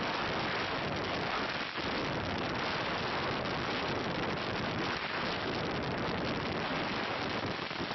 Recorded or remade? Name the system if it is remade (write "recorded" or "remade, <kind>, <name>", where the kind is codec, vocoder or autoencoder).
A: recorded